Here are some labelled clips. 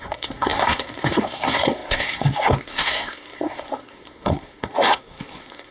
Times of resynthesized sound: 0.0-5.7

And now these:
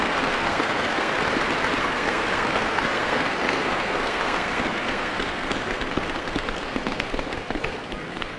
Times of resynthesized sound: 0.0-1.1; 1.8-8.4